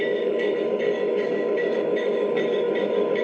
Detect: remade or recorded remade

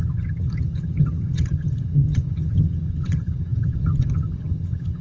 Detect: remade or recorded remade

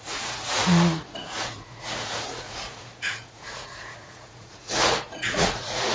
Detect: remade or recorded remade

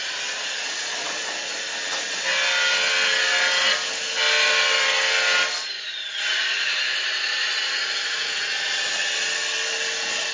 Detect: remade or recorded recorded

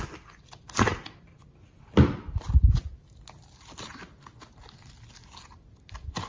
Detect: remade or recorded recorded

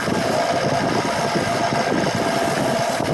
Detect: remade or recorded recorded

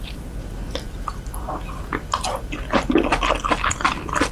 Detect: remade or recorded recorded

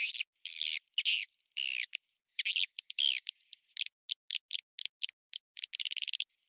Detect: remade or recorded recorded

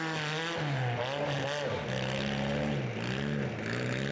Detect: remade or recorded recorded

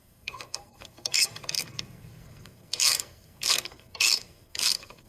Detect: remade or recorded remade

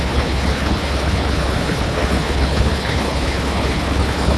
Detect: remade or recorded remade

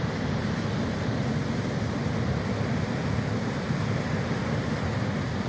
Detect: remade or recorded recorded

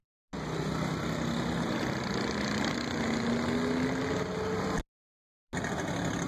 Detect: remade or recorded recorded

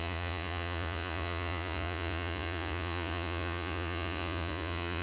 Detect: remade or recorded remade